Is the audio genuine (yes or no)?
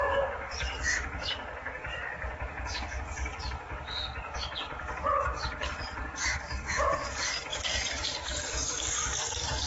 no